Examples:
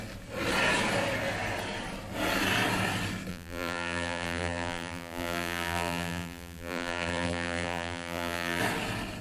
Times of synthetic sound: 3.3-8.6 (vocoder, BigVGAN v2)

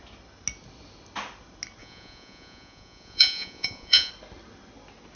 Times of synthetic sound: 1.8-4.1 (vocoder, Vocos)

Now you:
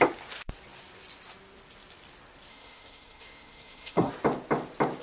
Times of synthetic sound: 2.5-4.1 (codec, SNAC)